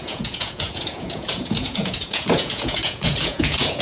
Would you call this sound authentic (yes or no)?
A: no